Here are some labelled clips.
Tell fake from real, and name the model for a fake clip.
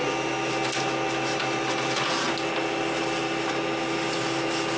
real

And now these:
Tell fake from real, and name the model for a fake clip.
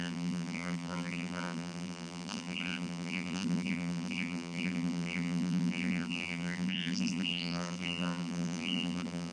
fake, vocoder, BigVGAN v2